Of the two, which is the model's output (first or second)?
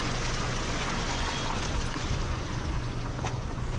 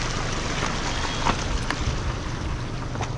first